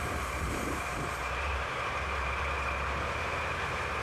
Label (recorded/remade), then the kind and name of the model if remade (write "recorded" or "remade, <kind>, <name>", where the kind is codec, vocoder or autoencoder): remade, vocoder, BigVGAN v2